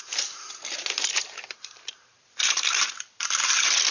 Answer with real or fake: fake